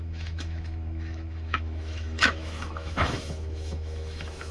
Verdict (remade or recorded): remade